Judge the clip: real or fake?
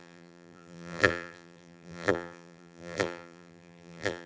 fake